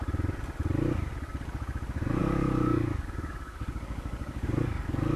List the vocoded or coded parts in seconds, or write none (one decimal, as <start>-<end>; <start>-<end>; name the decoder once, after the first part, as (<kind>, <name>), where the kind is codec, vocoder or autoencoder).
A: 2.2-5.2 (codec, DAC)